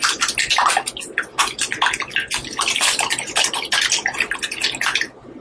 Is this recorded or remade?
recorded